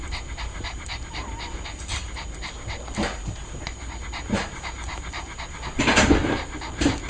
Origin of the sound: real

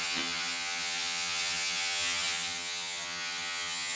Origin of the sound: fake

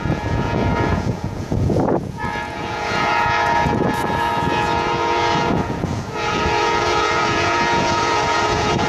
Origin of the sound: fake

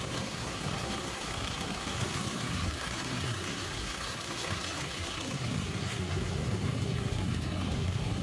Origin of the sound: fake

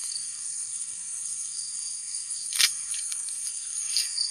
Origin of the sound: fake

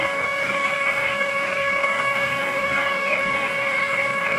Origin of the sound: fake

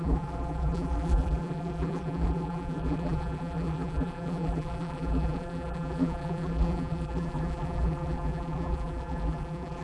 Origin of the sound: fake